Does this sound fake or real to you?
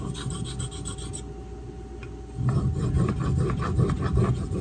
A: real